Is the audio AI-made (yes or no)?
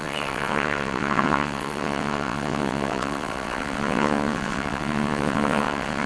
yes